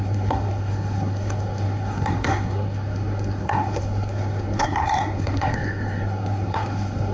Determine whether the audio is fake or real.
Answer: fake